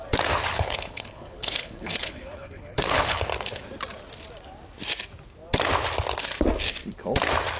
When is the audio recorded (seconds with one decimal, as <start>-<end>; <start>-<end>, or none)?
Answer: 0.0-0.5; 3.2-7.6